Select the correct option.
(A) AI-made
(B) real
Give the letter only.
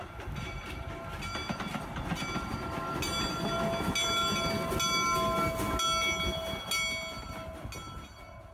B